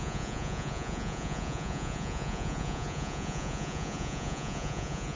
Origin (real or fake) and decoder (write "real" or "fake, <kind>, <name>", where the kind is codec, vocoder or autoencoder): fake, vocoder, Vocos